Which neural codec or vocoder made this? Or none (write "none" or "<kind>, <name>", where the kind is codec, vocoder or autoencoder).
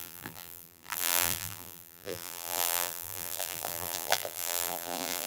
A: vocoder, BigVGAN v2